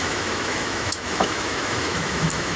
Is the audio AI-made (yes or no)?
yes